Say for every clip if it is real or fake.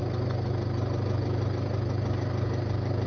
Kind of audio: real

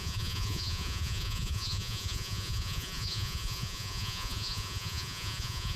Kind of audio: fake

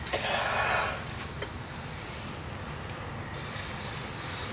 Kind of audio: real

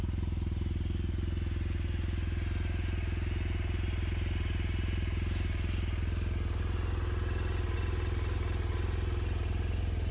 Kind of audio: real